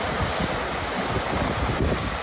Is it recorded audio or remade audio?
recorded